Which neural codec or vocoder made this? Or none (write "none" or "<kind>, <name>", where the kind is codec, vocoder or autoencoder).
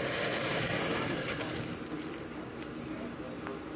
none